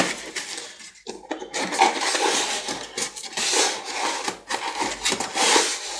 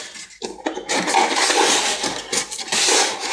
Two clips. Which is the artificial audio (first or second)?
second